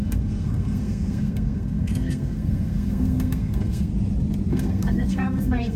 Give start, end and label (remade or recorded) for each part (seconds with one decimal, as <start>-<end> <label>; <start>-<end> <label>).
0.0-3.9 remade; 3.9-4.5 recorded; 4.5-5.8 remade